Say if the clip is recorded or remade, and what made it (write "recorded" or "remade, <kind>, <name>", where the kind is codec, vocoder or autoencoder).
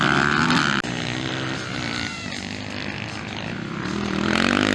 recorded